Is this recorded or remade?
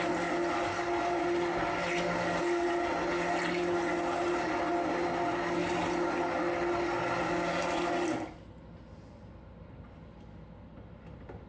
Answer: recorded